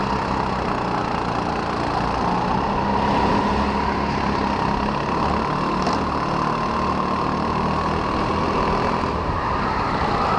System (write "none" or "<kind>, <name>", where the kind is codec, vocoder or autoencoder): none